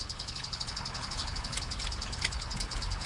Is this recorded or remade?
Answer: remade